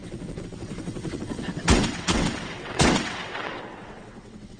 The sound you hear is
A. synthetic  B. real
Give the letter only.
A